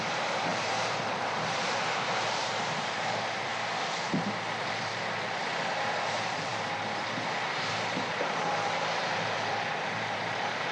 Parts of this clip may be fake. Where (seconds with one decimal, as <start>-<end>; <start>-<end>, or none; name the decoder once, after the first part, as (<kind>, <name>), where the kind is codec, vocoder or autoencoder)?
0.0-3.5 (vocoder, BigVGAN v2); 4.7-5.4; 6.1-10.7

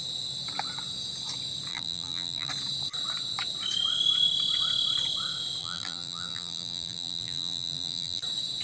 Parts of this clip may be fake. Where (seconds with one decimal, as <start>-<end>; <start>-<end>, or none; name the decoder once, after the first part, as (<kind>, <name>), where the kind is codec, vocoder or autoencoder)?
1.7-2.5 (vocoder, BigVGAN v2); 5.6-8.2

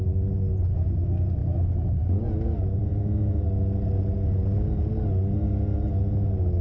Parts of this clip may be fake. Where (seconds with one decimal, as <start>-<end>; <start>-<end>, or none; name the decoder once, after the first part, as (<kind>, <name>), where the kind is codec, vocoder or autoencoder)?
none

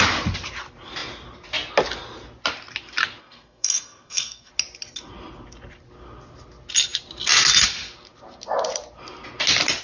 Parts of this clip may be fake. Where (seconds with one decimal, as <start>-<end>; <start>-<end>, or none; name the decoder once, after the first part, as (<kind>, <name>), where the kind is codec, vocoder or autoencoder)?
3.2-4.5 (codec, SNAC)

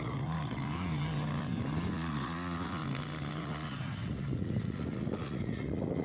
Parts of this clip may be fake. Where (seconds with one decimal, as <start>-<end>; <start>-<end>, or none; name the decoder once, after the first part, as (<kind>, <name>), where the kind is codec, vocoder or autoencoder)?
0.0-0.6 (vocoder, Vocos); 1.9-2.8; 3.4-6.0

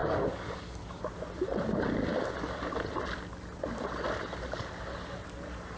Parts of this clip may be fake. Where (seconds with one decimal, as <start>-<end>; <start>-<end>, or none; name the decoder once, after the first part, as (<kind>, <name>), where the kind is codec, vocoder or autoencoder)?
0.0-1.1 (codec, DAC)

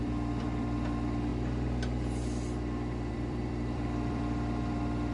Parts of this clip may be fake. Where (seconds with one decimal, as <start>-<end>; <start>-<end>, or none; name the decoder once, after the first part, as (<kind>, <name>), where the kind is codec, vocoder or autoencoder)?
0.0-1.3 (vocoder, BigVGAN v2); 3.1-5.1